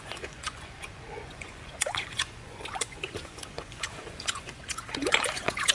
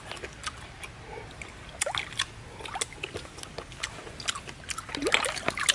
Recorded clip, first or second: second